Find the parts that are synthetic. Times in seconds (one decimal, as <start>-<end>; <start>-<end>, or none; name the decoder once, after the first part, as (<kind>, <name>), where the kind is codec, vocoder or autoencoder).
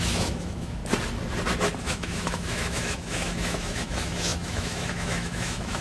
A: 0.0-0.8 (autoencoder, DAC-VAE); 1.8-5.8